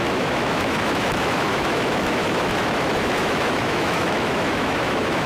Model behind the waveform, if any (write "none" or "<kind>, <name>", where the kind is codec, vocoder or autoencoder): autoencoder, DAC-VAE